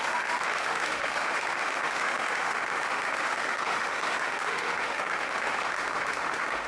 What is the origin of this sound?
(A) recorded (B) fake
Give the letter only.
B